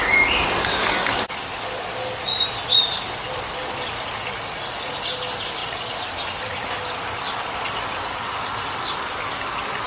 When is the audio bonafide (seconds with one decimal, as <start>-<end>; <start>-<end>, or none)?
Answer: 0.0-9.9